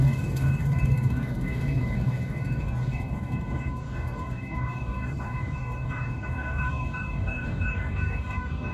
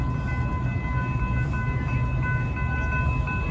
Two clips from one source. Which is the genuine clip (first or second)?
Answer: second